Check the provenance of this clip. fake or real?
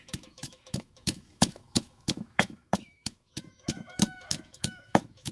fake